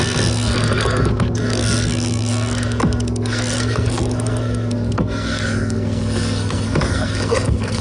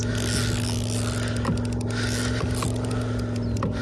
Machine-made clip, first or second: first